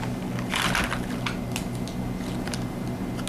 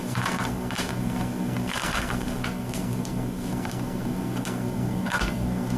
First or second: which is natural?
first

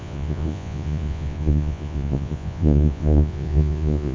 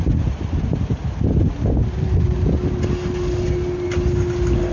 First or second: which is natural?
second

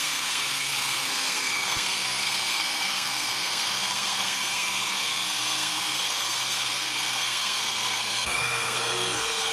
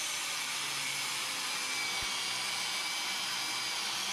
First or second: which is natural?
second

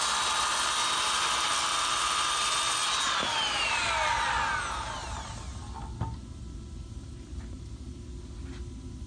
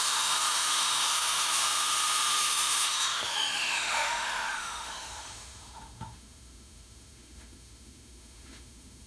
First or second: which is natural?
first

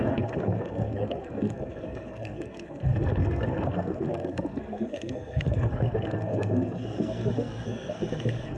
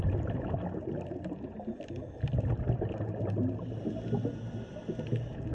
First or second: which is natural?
second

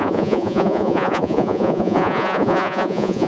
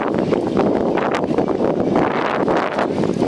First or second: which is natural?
second